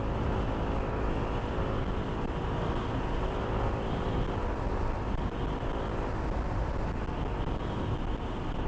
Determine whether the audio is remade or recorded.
recorded